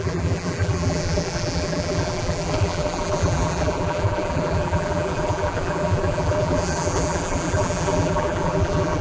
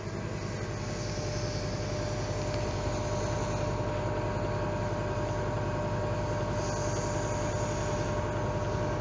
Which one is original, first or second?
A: second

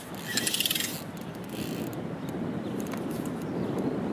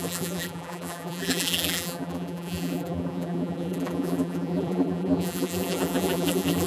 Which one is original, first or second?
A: first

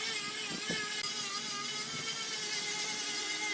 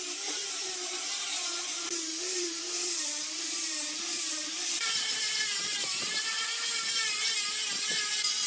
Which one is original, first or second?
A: first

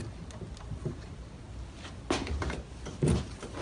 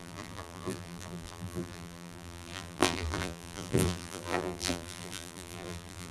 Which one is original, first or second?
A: first